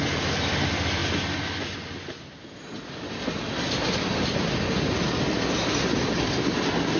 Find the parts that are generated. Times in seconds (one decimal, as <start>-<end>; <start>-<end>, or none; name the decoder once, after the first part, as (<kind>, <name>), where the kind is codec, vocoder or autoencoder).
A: none